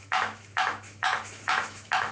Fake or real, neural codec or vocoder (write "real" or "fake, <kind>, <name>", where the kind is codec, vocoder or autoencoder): fake, autoencoder, DAC-VAE